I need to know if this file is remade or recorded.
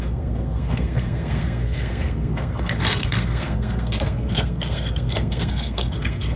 remade